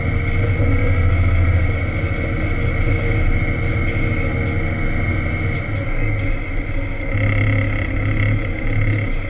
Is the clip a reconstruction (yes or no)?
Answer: no